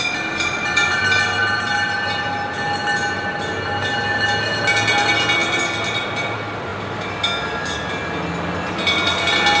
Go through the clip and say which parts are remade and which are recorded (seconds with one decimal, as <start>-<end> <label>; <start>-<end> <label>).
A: 0.0-9.6 recorded